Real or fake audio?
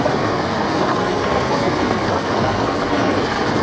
fake